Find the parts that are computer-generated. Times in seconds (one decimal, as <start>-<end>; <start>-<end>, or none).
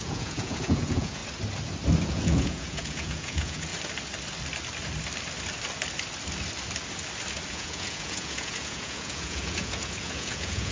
0.0-1.2; 2.0-3.7; 7.5-10.7